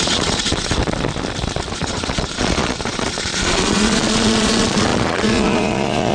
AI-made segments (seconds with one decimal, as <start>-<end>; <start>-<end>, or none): 0.0-0.8; 1.7-6.1